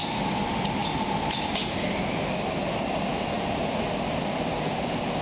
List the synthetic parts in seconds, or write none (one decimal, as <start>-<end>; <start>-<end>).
none